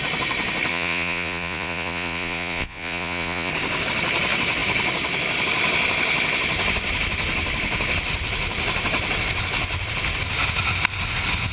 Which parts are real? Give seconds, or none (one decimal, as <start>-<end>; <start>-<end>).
0.0-0.7; 3.5-11.5